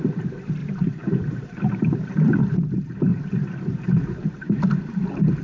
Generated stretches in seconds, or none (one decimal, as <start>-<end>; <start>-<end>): 0.6-2.6; 3.1-4.9